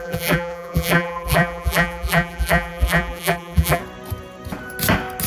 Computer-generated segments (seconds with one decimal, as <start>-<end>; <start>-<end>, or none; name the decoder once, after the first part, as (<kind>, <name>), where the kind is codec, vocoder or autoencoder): 0.0-3.8 (vocoder, BigVGAN v2)

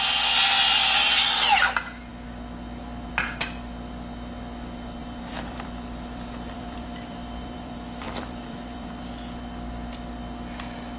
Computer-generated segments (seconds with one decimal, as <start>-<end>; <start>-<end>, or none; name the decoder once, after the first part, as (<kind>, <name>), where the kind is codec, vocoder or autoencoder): 5.0-8.9 (vocoder, BigVGAN v2)

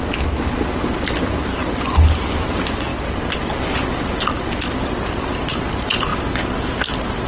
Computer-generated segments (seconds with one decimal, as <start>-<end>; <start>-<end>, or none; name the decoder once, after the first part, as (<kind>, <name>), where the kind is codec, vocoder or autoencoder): none